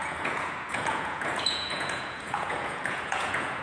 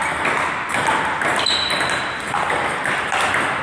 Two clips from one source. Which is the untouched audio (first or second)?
second